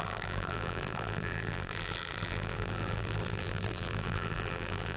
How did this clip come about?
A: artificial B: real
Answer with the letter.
A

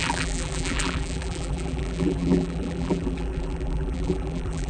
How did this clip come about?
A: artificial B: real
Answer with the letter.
A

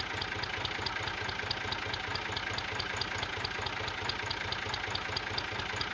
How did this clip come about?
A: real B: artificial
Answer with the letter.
A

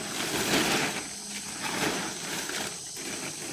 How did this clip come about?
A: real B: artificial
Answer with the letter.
A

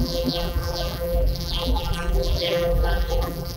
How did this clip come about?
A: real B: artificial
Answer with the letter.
B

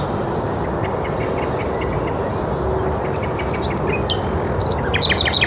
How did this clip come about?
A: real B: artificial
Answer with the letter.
A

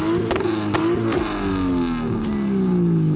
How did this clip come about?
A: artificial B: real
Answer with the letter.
B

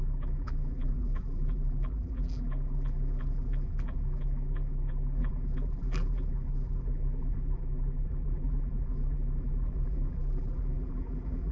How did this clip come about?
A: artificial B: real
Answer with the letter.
A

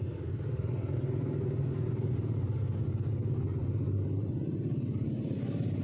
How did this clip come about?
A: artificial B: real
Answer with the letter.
A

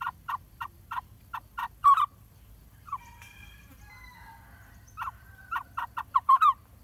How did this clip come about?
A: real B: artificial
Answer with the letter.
B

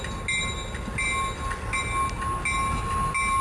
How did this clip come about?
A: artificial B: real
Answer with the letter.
B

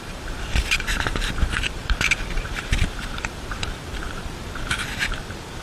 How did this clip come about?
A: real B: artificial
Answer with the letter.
B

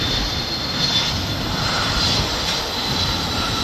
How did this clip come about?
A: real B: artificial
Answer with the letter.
B